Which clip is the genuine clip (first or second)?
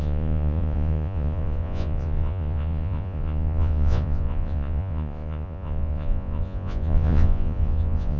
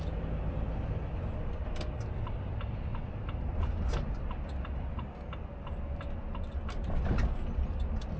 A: second